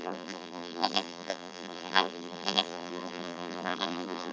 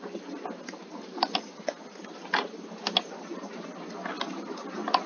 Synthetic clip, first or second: first